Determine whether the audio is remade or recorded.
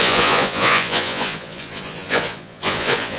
remade